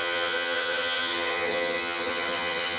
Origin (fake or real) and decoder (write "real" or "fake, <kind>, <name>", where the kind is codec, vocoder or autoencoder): fake, vocoder, HiFi-GAN